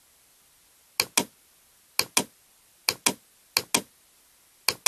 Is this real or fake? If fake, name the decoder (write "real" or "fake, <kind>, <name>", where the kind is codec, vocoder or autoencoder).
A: real